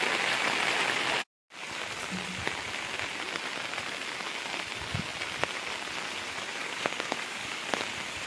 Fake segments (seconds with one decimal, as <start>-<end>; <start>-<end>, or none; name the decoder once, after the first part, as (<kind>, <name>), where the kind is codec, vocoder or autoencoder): 6.6-7.7 (codec, DAC)

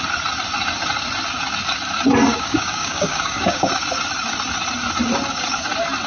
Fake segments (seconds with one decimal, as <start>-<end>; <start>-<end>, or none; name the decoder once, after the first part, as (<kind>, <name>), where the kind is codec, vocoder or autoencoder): 2.3-3.7 (codec, DAC)

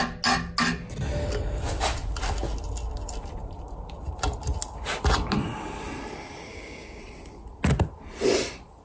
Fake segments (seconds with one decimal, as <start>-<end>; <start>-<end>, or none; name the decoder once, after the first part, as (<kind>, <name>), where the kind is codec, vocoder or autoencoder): 6.5-7.0 (codec, DAC)

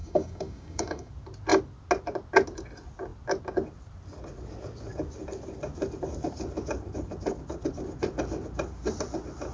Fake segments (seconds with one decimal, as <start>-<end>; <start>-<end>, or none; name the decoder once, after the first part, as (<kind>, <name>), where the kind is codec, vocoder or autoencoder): 0.0-1.1 (codec, DAC)

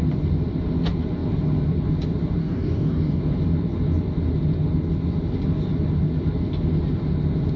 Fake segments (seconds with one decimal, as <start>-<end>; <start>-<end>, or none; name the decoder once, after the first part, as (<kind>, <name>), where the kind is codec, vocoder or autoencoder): 2.4-3.2 (codec, DAC)